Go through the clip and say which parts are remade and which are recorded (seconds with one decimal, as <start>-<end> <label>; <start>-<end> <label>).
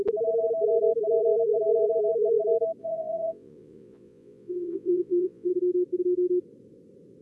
0.0-2.8 recorded; 2.8-5.5 remade; 5.5-7.2 recorded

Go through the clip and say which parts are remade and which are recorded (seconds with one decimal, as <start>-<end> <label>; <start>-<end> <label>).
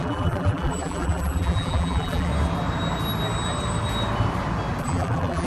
0.0-2.3 remade; 2.3-4.8 recorded; 4.8-5.5 remade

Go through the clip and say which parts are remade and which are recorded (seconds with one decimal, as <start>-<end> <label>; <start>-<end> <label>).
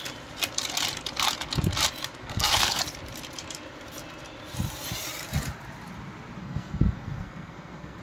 0.0-2.2 recorded; 2.2-2.8 remade; 2.8-6.4 recorded; 6.4-8.0 remade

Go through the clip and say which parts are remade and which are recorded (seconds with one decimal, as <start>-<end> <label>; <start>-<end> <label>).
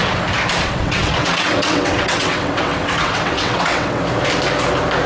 0.0-0.6 recorded; 0.6-4.0 remade; 4.0-5.1 recorded